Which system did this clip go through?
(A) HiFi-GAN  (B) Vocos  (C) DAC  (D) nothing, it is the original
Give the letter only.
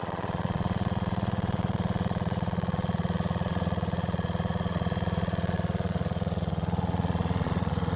B